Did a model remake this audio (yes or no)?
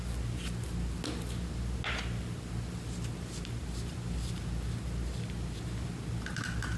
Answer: no